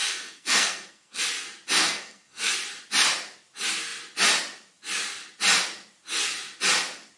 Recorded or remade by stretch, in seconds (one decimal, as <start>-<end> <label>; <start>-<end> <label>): 0.0-1.2 remade; 1.2-1.8 recorded; 1.8-2.5 remade; 2.5-7.2 recorded